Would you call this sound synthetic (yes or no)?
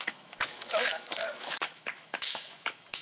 yes